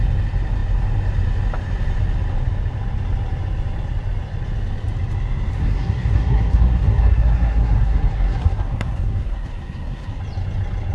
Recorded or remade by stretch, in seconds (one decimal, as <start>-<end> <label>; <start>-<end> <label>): 0.0-5.5 recorded; 5.5-10.2 remade; 10.2-10.9 recorded